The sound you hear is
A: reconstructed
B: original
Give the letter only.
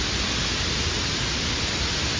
B